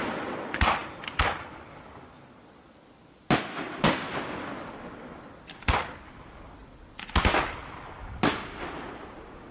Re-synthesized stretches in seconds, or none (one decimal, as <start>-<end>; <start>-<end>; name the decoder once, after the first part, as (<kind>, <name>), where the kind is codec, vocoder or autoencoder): none